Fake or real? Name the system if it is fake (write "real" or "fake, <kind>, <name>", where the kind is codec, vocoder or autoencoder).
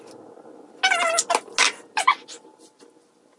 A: real